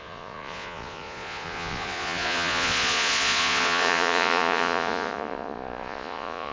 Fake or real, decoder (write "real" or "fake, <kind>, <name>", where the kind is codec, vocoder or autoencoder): fake, vocoder, Vocos